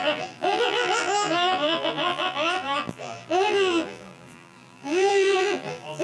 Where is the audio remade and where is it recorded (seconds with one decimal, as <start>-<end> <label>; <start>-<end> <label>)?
0.0-6.0 remade